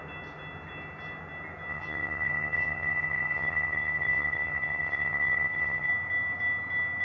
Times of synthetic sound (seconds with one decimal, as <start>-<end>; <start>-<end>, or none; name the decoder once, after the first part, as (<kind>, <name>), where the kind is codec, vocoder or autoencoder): 1.7-5.9 (vocoder, HiFi-GAN)